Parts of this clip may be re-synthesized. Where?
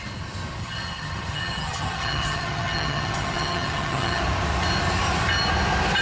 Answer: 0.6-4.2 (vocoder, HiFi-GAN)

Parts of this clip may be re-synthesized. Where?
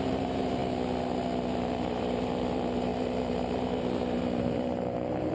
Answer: 0.0-0.6 (vocoder, BigVGAN v2); 1.5-5.3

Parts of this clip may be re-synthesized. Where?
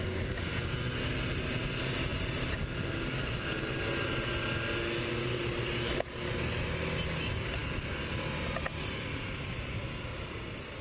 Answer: none